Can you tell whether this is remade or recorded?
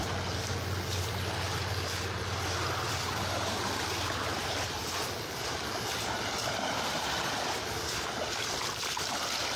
recorded